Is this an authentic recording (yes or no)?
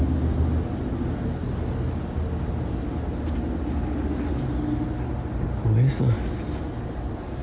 yes